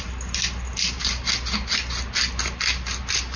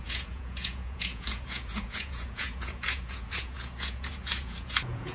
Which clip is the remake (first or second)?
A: second